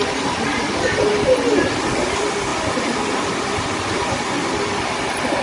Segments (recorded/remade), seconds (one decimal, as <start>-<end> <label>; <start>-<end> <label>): 0.0-0.5 recorded; 0.5-1.1 remade; 1.1-5.4 recorded